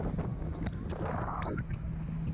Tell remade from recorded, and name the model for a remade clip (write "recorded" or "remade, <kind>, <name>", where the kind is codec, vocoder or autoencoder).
recorded